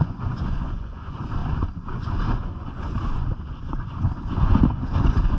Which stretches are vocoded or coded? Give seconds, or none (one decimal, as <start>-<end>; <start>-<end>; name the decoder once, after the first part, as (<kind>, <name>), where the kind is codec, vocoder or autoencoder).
0.0-5.4 (vocoder, Vocos)